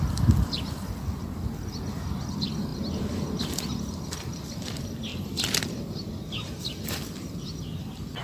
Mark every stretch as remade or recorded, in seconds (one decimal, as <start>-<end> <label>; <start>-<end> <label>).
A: 0.0-5.1 remade; 5.1-8.2 recorded